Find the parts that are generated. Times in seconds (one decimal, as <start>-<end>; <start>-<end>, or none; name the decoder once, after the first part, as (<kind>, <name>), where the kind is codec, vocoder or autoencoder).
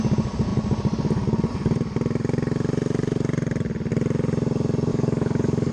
4.9-5.7 (codec, DAC)